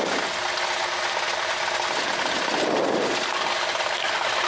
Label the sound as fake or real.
real